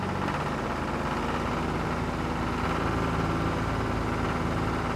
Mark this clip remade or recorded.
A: recorded